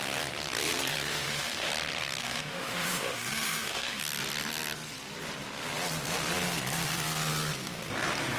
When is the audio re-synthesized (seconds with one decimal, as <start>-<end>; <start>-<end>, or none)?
1.1-1.7; 2.2-4.0